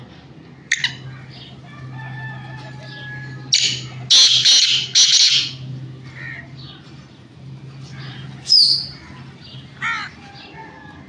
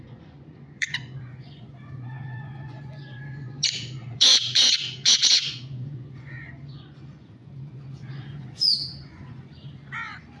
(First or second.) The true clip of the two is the first